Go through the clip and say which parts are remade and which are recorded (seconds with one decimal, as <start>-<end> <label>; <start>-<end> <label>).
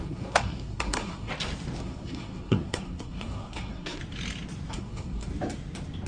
0.0-1.3 remade; 1.3-1.8 recorded; 1.8-4.0 remade; 4.0-4.7 recorded; 4.7-5.3 remade; 5.3-6.1 recorded